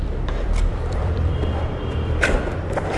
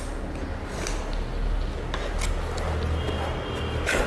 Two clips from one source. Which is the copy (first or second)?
first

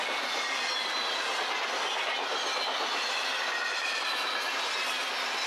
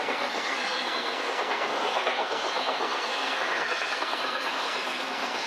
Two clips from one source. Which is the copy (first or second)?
second